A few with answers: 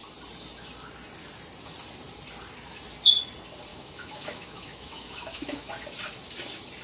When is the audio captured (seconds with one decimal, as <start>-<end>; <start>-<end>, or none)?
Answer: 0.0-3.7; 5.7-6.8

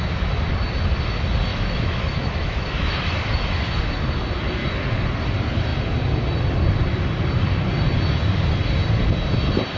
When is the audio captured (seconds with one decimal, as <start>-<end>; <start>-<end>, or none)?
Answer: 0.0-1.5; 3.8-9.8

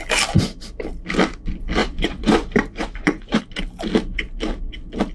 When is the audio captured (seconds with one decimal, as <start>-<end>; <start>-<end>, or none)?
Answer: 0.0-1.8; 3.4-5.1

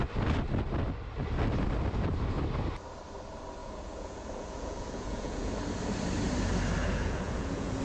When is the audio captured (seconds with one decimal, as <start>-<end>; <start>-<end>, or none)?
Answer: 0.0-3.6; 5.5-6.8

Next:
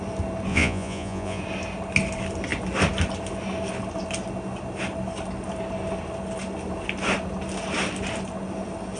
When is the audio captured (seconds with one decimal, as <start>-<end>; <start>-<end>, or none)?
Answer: 0.0-0.5; 1.4-9.0

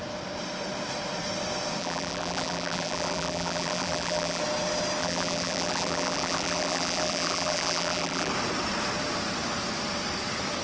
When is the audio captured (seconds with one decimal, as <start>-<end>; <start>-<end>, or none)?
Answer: 0.0-1.8; 4.4-5.0; 8.3-10.6